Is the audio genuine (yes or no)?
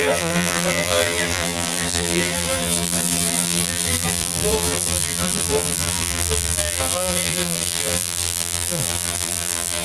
no